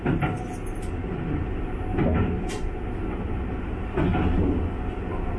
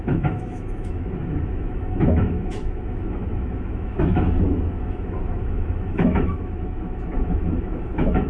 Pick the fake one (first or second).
second